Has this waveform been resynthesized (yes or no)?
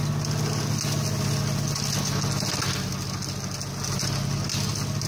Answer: no